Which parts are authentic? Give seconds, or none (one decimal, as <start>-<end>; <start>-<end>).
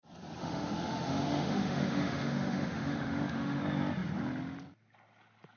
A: 0.0-0.4; 3.6-5.6